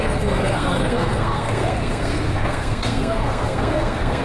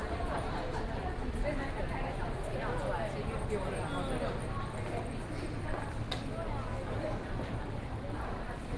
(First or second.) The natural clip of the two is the second